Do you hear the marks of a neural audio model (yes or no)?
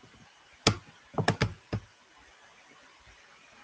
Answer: no